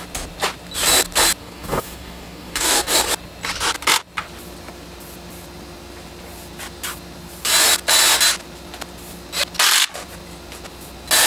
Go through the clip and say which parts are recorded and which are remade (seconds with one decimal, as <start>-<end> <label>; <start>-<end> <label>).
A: 0.0-1.4 recorded; 1.4-3.0 remade; 3.0-11.3 recorded